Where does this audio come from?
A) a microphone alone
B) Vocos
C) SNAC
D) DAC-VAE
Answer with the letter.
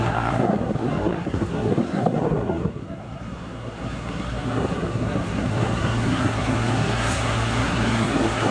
C